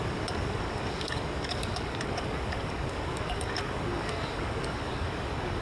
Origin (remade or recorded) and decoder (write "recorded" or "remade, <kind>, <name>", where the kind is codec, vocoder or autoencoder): remade, codec, DAC